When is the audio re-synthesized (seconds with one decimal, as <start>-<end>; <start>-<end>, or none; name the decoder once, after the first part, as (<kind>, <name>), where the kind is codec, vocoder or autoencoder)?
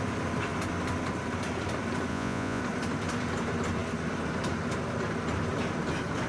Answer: 2.1-2.6 (vocoder, Vocos)